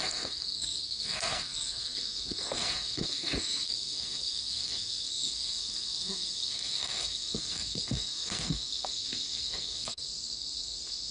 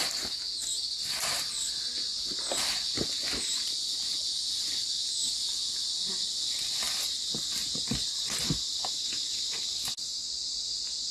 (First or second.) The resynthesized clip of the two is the first